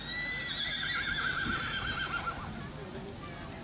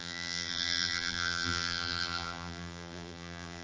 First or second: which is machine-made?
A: second